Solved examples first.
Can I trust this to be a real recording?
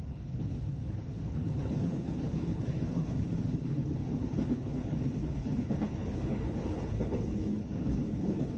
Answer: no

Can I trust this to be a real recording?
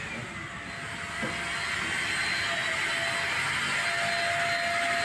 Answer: yes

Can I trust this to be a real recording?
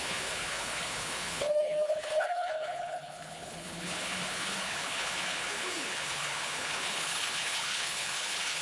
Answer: no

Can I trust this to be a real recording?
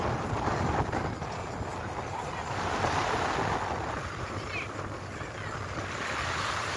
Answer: yes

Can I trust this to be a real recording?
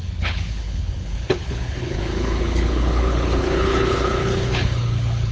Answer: no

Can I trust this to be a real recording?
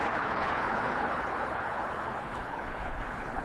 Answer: no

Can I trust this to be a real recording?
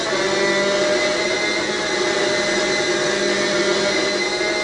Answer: yes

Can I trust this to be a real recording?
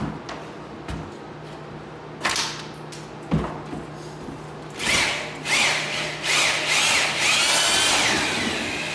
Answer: yes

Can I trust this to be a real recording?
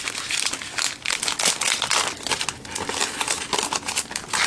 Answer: yes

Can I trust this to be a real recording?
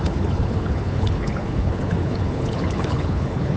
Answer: no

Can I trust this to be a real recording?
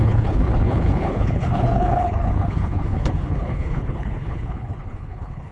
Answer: no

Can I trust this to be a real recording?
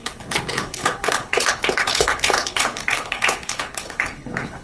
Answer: no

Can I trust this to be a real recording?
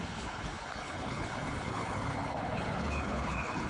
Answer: no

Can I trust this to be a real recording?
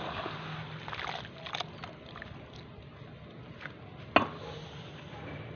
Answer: yes